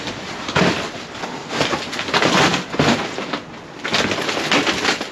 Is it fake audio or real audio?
real